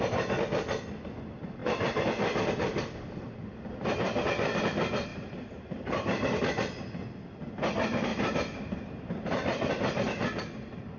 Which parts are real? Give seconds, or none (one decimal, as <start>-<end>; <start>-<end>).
0.0-1.6; 4.6-5.1; 6.4-8.1; 9.7-11.0

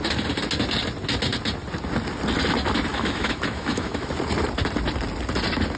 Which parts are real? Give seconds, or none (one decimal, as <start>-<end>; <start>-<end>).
0.0-2.9; 4.1-5.8

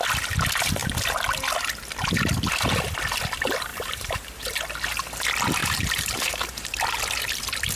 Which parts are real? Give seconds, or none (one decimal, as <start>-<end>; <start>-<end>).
0.0-3.7; 4.3-5.6; 6.8-7.8

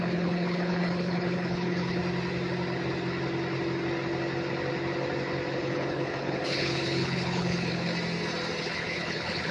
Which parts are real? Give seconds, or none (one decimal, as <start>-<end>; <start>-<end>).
2.0-5.6; 7.9-8.6

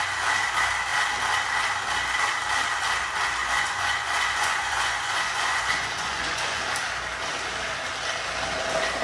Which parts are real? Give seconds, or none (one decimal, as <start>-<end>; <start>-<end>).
0.0-3.4; 6.6-9.0

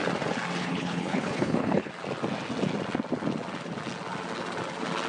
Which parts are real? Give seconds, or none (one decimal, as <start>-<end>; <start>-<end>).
0.0-0.6; 1.9-5.1